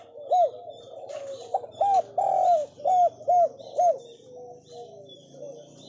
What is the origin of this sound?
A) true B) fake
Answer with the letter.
A